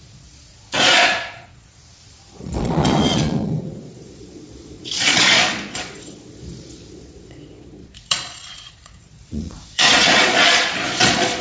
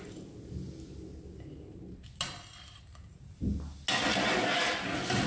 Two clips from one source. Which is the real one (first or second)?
second